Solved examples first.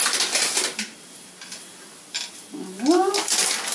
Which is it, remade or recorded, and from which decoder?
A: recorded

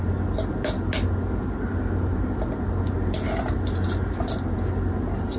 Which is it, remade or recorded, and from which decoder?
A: recorded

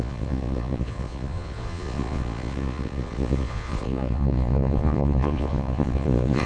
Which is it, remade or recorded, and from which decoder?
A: remade, vocoder, Vocos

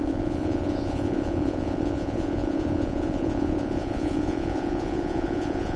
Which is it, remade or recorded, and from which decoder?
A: remade, vocoder, Vocos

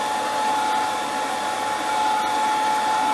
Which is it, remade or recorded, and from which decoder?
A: recorded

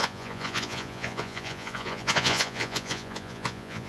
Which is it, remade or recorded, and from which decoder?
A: remade, vocoder, Vocos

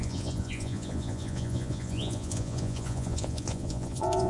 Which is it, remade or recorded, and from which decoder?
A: remade, vocoder, Vocos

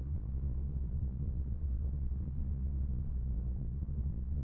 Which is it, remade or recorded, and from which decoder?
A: remade, vocoder, Vocos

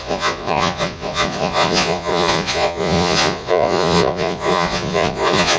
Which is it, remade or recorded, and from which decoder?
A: remade, vocoder, Vocos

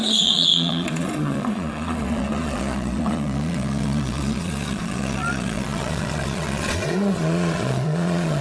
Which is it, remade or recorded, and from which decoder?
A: remade, vocoder, Vocos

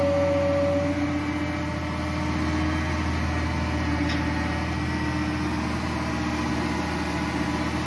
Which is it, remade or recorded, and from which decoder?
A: recorded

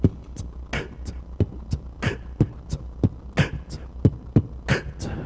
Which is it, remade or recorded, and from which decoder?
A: recorded